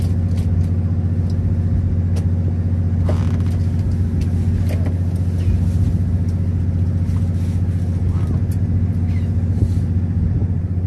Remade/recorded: recorded